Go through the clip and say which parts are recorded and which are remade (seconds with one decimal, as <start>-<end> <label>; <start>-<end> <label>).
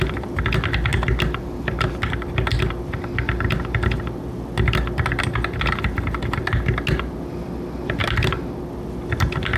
0.0-9.6 recorded